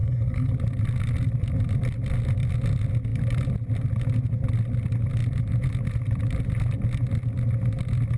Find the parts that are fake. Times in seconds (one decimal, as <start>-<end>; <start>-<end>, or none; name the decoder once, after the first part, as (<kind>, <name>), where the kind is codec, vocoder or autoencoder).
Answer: 0.0-0.5 (codec, SNAC)